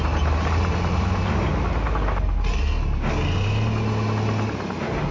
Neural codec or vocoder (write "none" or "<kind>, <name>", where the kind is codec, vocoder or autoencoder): none